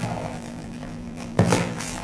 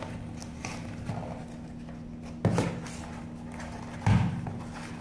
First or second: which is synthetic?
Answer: first